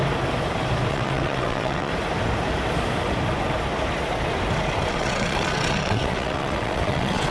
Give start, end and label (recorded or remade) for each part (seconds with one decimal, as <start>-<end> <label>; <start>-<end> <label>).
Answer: 0.0-0.9 recorded; 0.9-1.9 remade; 1.9-4.9 recorded; 4.9-7.3 remade